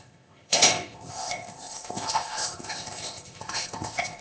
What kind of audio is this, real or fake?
fake